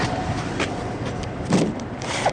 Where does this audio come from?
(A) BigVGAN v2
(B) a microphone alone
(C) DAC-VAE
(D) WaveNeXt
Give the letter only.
B